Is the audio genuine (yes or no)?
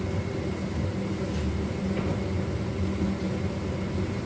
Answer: yes